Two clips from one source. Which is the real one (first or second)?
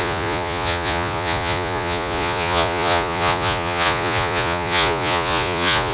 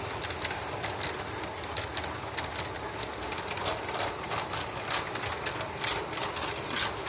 second